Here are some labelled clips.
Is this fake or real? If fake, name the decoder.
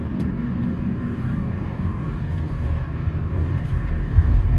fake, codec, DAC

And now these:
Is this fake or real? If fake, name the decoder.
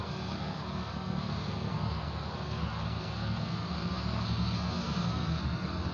fake, codec, SNAC